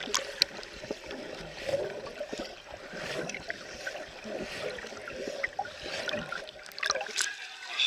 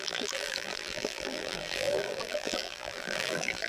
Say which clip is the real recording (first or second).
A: first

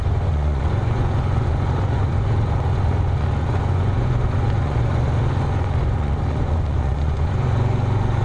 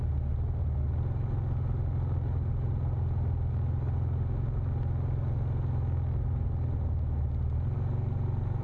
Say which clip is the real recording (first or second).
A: second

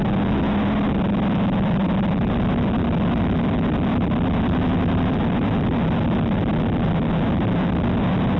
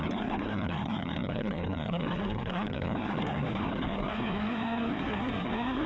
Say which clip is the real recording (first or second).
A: first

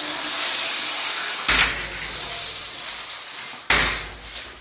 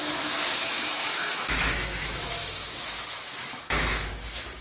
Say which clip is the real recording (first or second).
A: first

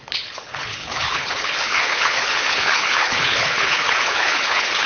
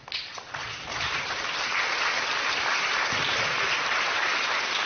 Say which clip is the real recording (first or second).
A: second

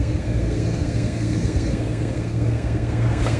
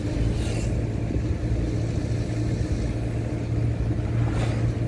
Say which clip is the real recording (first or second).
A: second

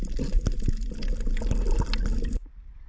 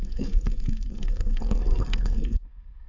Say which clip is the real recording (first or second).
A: first